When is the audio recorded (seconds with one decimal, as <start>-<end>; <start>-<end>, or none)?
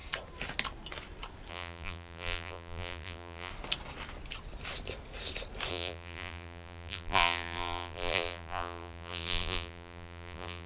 0.0-1.5; 3.5-5.7